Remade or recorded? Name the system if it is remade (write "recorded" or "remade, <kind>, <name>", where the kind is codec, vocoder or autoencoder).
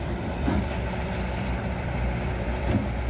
remade, vocoder, BigVGAN v2